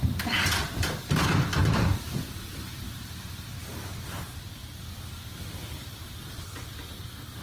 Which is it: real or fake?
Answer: fake